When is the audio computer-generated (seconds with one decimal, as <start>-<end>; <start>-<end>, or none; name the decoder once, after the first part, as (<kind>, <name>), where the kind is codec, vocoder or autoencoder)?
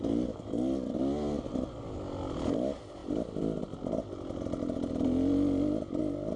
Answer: none